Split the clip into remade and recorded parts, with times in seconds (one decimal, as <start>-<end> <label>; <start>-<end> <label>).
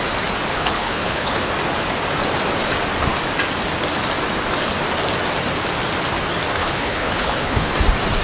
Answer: 0.0-0.5 recorded; 0.5-1.5 remade; 1.5-6.6 recorded; 6.6-7.7 remade; 7.7-8.2 recorded